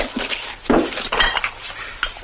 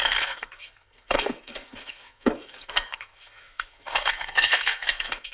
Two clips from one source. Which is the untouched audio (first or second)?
first